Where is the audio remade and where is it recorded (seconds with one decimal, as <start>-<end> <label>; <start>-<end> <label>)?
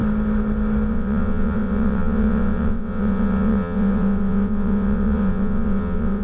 0.0-0.9 recorded; 0.9-6.2 remade